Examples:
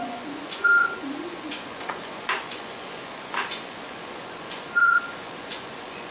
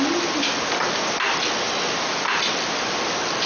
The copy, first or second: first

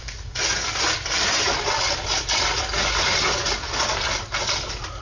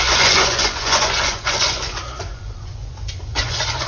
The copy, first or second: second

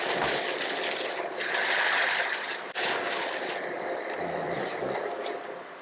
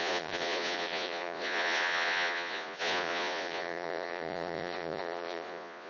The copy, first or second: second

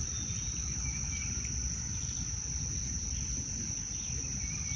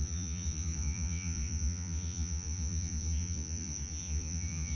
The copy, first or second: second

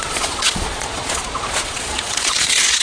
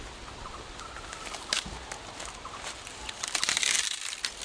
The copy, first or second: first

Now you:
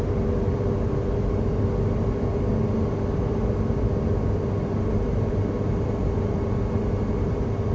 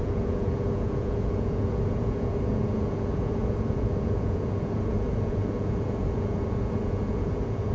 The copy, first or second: second